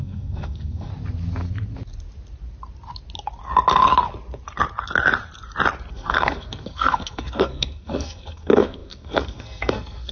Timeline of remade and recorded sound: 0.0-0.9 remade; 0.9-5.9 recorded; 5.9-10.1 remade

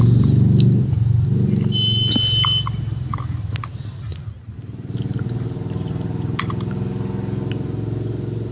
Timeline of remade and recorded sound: 0.0-8.5 recorded